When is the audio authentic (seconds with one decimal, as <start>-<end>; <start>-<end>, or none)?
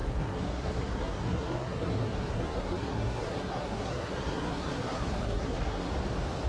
5.9-6.5